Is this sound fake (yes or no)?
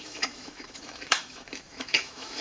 yes